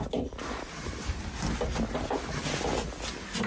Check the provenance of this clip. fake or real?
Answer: real